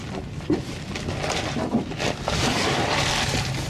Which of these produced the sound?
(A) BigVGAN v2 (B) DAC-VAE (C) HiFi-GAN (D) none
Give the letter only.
D